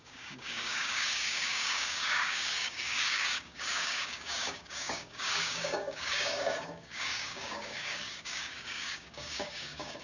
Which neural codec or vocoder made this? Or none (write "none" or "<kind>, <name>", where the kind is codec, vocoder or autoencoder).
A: codec, DAC